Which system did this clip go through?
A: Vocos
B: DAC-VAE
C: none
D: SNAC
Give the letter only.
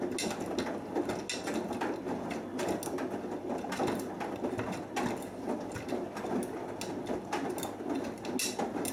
C